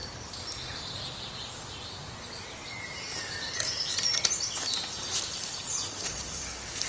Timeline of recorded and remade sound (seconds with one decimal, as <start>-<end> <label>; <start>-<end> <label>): 0.0-6.9 recorded